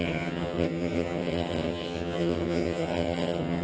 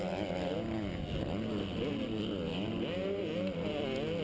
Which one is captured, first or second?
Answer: second